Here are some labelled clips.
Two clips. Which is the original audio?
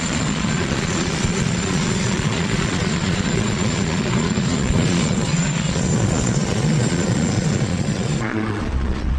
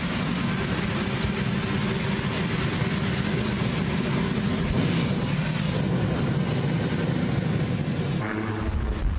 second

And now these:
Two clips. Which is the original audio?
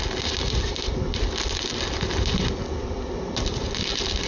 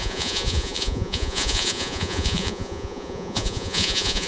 first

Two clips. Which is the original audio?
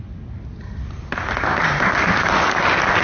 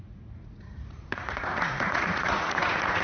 first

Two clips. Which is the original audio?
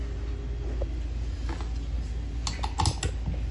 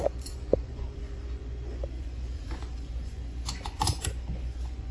first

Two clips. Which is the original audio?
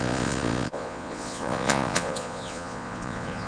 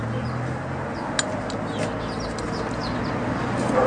second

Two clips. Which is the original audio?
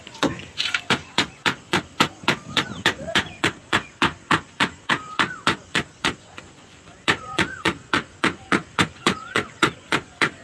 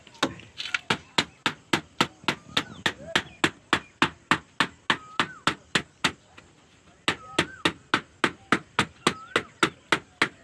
second